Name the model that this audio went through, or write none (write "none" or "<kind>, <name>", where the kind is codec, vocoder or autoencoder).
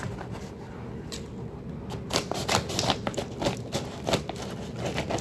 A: none